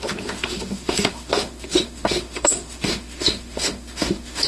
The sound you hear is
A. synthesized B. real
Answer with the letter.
A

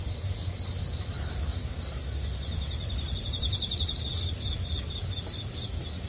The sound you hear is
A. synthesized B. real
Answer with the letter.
B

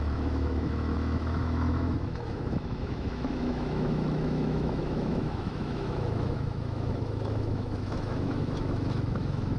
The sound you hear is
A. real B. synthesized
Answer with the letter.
B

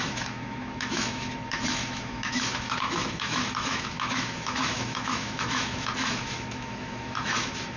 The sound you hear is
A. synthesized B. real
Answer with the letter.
A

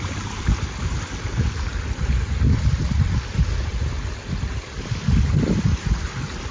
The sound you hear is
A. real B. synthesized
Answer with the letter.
A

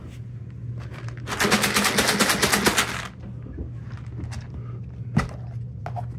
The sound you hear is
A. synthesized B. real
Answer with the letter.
B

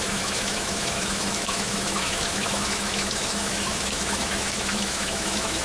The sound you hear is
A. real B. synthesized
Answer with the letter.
B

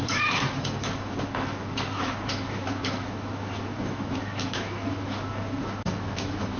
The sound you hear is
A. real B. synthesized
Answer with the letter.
B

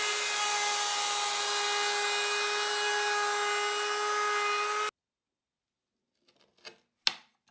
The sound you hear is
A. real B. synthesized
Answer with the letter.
A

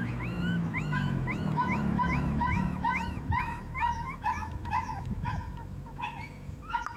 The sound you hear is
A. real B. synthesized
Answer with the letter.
B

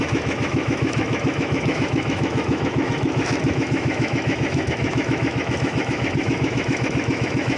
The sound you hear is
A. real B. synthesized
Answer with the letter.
B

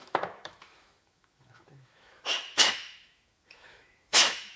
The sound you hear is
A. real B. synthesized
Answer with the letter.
B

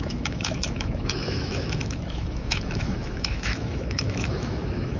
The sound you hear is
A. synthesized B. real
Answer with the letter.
A